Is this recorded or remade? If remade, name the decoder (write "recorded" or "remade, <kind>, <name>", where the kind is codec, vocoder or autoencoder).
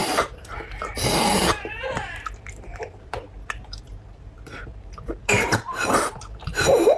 remade, vocoder, BigVGAN v2